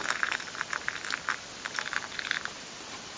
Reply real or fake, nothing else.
real